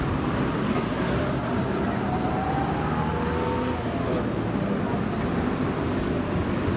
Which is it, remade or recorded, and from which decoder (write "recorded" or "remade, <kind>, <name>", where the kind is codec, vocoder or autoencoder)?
recorded